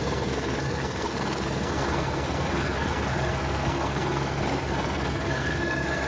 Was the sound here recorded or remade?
remade